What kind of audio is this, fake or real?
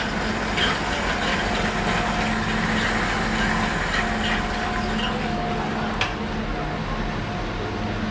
real